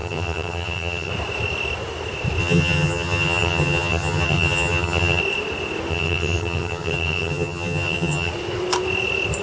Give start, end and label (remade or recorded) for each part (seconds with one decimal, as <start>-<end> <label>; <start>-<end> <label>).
0.0-1.1 remade; 1.1-2.4 recorded; 2.4-5.2 remade; 5.2-5.9 recorded; 5.9-8.3 remade; 8.3-9.4 recorded